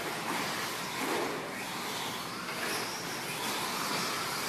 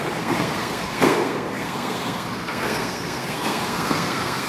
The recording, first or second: first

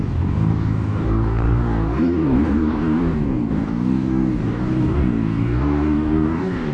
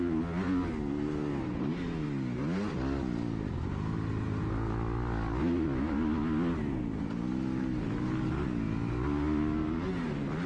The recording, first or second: second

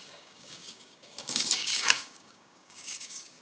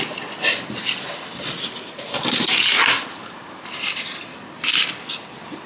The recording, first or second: second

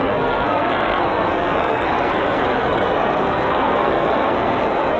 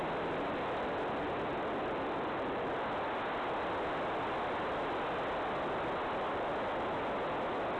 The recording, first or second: second